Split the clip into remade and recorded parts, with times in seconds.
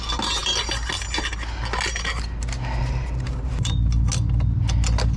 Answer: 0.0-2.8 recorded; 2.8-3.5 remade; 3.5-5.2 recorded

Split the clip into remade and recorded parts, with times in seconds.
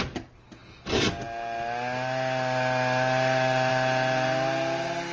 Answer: 0.0-5.1 recorded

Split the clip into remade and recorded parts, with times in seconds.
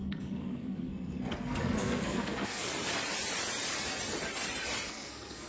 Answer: 0.0-2.7 remade; 2.7-4.9 recorded; 4.9-5.5 remade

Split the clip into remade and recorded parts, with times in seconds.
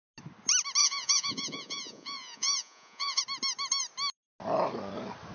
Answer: 0.0-0.8 recorded; 0.8-3.2 remade; 3.2-5.3 recorded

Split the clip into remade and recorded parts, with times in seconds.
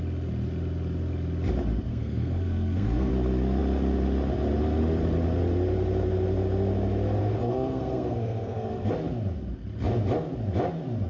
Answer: 0.0-1.9 recorded; 1.9-3.1 remade; 3.1-7.2 recorded; 7.2-8.9 remade; 8.9-11.1 recorded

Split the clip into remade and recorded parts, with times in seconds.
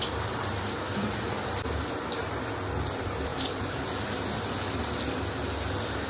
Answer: 0.0-1.6 remade; 1.6-3.3 recorded; 3.3-4.3 remade; 4.3-6.1 recorded